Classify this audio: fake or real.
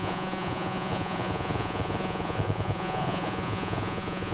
fake